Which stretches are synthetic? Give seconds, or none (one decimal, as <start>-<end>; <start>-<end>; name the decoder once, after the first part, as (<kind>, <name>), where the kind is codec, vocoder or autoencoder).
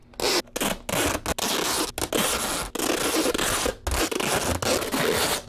none